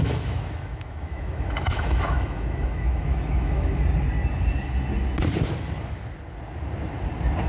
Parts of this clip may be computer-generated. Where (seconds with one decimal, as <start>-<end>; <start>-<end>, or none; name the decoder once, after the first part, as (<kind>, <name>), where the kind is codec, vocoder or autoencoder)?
0.0-3.8 (autoencoder, DAC-VAE)